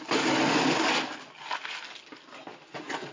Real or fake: real